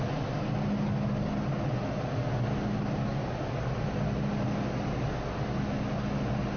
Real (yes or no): yes